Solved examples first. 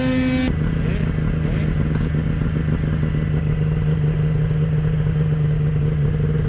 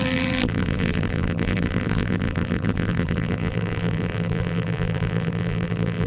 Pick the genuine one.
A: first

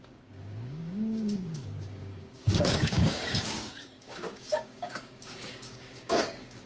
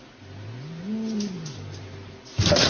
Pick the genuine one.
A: second